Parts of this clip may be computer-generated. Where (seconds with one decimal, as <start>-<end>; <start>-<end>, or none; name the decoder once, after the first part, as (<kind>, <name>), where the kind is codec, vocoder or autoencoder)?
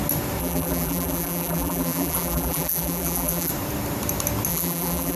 0.4-3.5 (vocoder, BigVGAN v2); 4.5-5.2